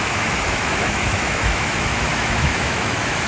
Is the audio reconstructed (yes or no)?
yes